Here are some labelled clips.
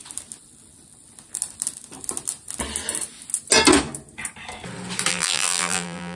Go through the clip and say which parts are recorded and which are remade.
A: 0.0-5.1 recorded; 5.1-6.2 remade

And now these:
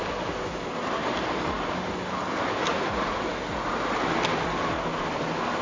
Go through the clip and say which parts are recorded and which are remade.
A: 0.0-2.7 recorded; 2.7-3.3 remade; 3.3-5.6 recorded

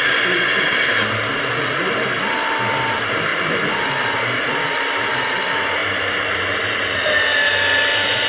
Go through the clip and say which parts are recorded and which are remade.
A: 0.0-3.3 recorded; 3.3-4.6 remade; 4.6-5.8 recorded; 5.8-6.5 remade; 6.5-8.3 recorded